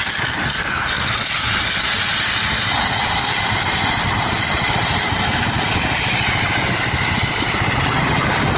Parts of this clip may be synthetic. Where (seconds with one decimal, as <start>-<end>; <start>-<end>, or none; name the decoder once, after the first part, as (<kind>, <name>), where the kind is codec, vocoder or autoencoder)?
0.5-1.1 (codec, SNAC)